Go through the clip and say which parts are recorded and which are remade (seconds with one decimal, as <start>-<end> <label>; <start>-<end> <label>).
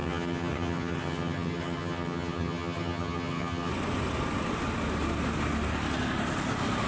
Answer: 0.0-3.7 remade; 3.7-6.9 recorded